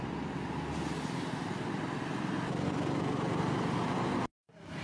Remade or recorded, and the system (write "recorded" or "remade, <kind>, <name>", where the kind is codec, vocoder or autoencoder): recorded